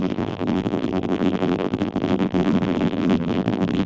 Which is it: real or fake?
fake